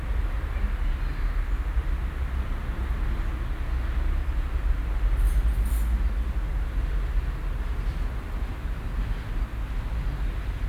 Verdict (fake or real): real